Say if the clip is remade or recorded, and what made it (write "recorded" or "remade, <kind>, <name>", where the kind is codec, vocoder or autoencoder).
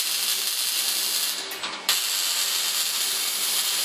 recorded